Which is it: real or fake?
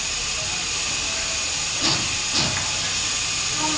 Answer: real